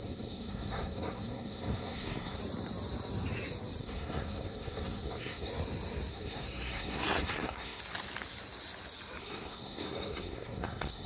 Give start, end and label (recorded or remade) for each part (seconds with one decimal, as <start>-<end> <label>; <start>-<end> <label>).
0.0-2.4 remade; 2.4-3.8 recorded; 3.8-5.5 remade; 5.5-6.1 recorded; 6.1-7.8 remade; 7.8-9.2 recorded; 9.2-11.1 remade